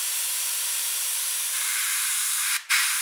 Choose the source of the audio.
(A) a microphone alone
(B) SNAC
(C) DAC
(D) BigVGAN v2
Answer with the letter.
D